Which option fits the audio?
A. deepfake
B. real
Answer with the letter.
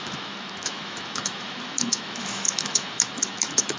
A